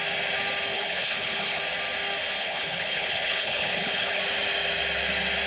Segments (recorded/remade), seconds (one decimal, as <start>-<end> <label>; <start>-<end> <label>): 0.0-0.7 recorded; 0.7-1.6 remade; 1.6-2.4 recorded; 2.4-4.2 remade; 4.2-5.5 recorded